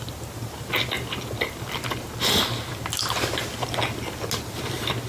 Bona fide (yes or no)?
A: yes